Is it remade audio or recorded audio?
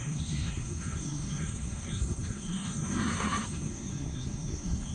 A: remade